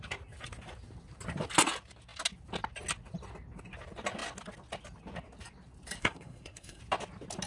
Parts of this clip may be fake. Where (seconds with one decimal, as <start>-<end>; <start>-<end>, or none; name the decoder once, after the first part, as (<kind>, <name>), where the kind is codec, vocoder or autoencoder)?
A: 6.0-6.8 (codec, SNAC)